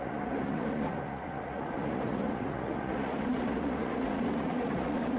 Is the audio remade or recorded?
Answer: remade